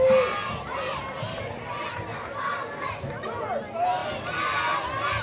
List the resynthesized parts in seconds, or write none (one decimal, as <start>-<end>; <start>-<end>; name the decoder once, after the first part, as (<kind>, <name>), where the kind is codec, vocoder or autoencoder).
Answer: none